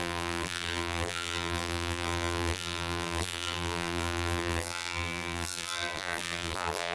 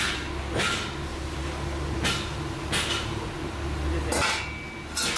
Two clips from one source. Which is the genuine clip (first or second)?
second